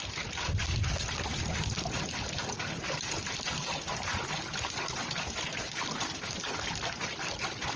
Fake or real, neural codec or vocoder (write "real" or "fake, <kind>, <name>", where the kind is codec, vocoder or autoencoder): real